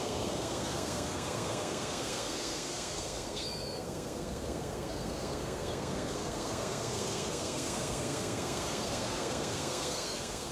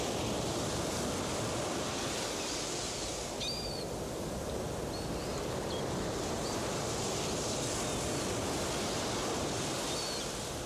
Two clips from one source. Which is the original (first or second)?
second